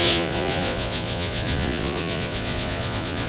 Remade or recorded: remade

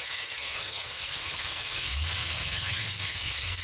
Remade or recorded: remade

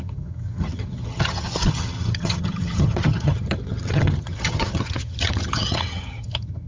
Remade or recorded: remade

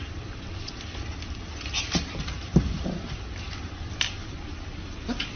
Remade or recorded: remade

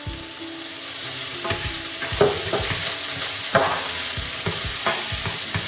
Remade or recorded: recorded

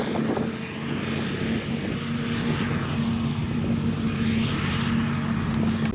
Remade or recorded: recorded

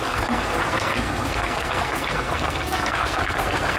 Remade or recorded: remade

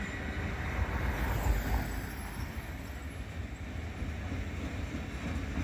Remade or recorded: recorded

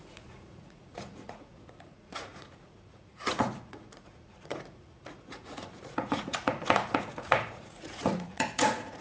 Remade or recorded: remade